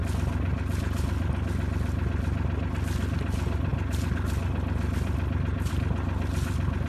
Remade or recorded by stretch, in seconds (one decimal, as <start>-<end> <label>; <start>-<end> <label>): 0.0-6.9 recorded